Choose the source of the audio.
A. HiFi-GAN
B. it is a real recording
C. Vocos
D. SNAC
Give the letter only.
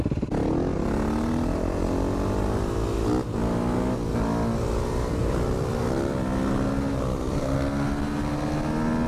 B